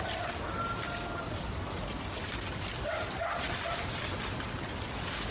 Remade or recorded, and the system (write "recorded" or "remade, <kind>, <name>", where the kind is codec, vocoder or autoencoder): recorded